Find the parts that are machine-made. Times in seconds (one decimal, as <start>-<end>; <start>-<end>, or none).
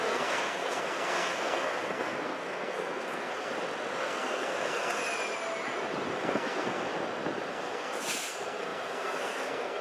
0.0-3.5; 4.0-5.0; 6.2-6.9; 7.5-9.8